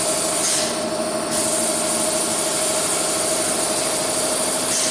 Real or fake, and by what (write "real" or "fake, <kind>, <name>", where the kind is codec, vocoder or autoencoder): real